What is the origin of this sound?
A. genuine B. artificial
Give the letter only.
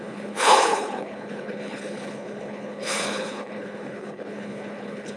B